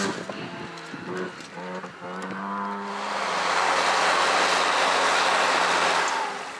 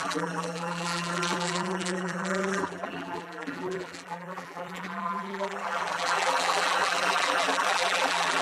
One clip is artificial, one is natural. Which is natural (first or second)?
first